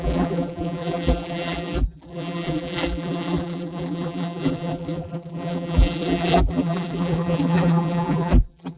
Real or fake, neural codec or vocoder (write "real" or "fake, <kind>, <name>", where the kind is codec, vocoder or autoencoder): fake, vocoder, BigVGAN v2